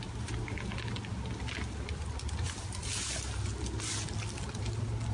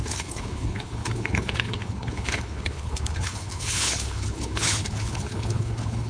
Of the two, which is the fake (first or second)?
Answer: second